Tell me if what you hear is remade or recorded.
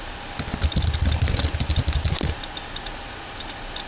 recorded